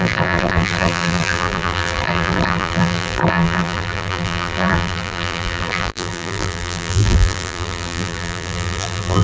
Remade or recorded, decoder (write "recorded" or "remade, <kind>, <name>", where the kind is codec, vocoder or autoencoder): remade, vocoder, BigVGAN v2